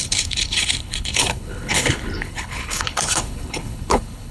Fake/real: fake